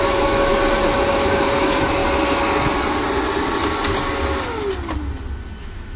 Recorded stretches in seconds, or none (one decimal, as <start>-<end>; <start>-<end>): 0.5-1.1; 2.0-5.6